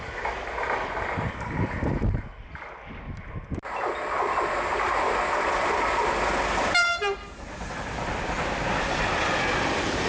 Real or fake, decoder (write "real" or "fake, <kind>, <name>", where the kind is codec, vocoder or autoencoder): real